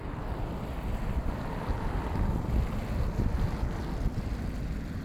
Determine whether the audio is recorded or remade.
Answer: recorded